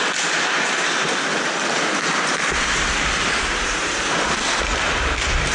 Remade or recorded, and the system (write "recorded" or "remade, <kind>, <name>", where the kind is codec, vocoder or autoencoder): recorded